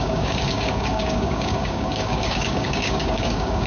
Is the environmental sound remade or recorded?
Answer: remade